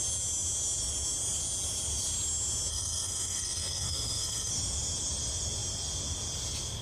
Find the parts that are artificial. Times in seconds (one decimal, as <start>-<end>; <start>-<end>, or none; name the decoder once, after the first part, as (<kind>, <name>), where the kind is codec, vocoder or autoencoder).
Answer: 2.7-4.5 (codec, SNAC)